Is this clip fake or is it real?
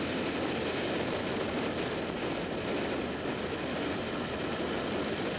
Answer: real